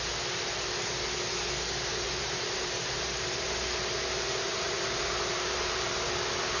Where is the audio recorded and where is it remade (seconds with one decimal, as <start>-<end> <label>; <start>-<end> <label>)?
0.0-1.9 recorded; 1.9-5.9 remade; 5.9-6.6 recorded